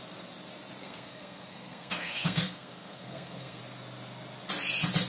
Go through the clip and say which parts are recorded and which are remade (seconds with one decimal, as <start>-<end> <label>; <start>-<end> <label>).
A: 0.0-0.8 recorded; 0.8-3.6 remade; 3.6-5.1 recorded

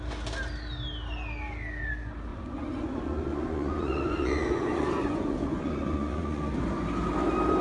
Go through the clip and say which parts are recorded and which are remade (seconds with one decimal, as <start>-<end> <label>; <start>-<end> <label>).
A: 0.0-2.3 recorded; 2.3-6.5 remade; 6.5-7.6 recorded

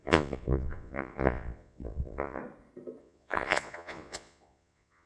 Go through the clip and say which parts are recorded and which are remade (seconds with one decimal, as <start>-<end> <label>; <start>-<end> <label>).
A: 0.0-2.4 remade; 2.4-3.0 recorded; 3.0-5.1 remade

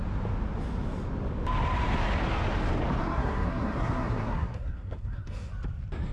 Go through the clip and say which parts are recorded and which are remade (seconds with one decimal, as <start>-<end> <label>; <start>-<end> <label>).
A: 0.0-3.0 recorded; 3.0-5.5 remade; 5.5-6.1 recorded

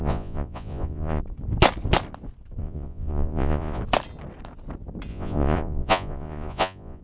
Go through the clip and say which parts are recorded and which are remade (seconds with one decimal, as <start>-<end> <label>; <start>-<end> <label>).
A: 0.0-1.2 remade; 1.2-2.6 recorded; 2.6-3.8 remade; 3.8-5.1 recorded; 5.1-7.0 remade